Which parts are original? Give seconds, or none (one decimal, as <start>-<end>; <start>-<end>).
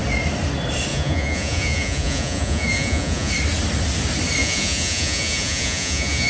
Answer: 0.0-0.9; 3.3-4.4